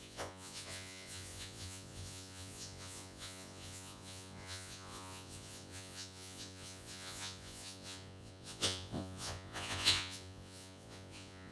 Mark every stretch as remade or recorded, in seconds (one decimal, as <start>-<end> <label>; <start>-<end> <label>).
0.0-11.5 remade